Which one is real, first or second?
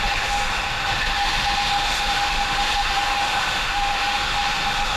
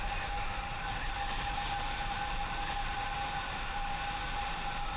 second